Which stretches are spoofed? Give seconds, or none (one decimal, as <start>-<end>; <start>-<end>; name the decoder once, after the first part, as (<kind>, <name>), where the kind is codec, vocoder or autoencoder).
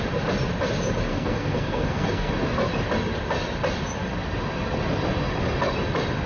1.1-2.3 (codec, SNAC)